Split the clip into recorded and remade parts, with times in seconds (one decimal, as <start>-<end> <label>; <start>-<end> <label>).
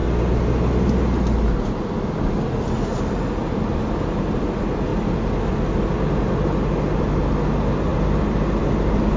0.0-9.2 recorded